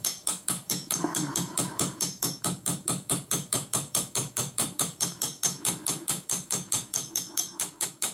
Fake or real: fake